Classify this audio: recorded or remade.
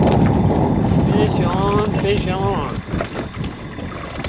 recorded